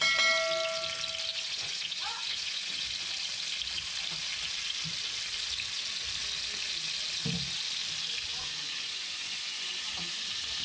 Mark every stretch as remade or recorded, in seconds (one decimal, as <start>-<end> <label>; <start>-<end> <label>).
0.0-1.3 recorded; 1.3-2.9 remade; 2.9-8.3 recorded; 8.3-9.7 remade; 9.7-10.6 recorded